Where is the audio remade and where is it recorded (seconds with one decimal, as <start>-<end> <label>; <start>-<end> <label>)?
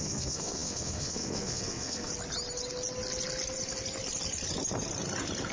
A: 0.0-2.1 remade; 2.1-5.5 recorded